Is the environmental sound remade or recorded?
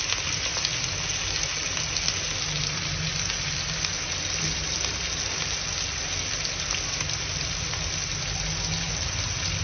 recorded